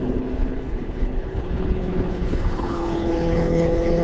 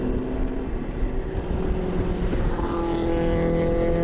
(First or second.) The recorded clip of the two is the second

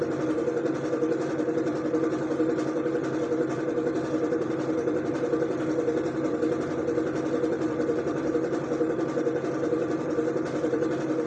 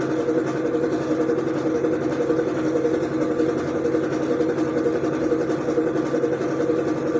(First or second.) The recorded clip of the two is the second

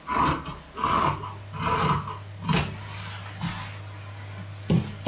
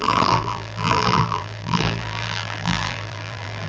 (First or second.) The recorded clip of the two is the first